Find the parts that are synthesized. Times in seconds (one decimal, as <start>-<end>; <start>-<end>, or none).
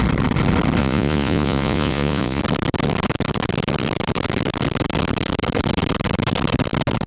0.8-2.4